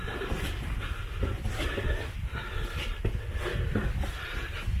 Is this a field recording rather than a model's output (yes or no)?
yes